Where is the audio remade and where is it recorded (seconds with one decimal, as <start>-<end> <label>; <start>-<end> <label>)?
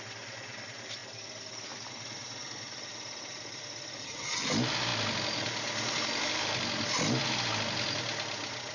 0.0-4.0 recorded; 4.0-4.5 remade; 4.5-8.7 recorded